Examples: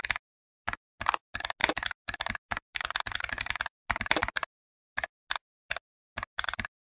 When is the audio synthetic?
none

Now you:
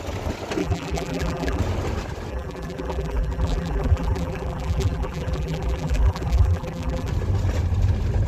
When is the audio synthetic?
0.6-1.6; 2.3-7.1

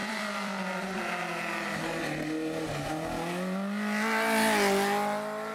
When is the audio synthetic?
0.0-0.6

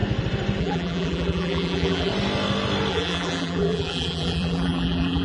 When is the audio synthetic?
0.6-2.1; 2.9-5.2

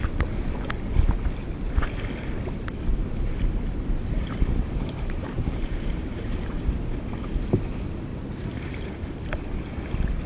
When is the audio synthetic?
3.0-6.7; 8.1-9.8